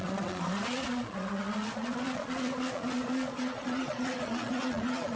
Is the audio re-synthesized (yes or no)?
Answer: yes